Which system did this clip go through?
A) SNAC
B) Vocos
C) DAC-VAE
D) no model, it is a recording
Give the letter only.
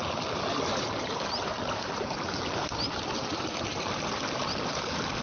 D